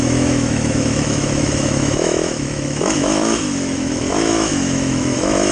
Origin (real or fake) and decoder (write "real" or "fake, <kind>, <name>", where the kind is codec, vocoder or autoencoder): fake, autoencoder, DAC-VAE